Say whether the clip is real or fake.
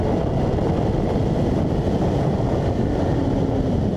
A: real